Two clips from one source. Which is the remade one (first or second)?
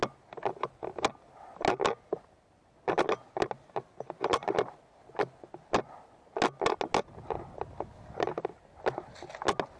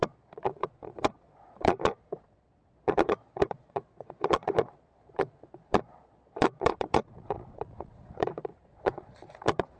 second